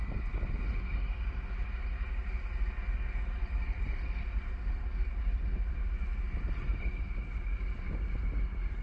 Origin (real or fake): real